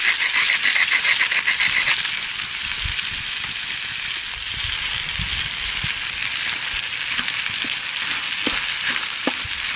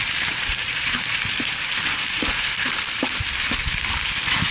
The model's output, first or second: second